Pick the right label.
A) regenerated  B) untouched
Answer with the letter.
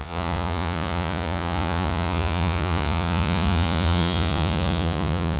A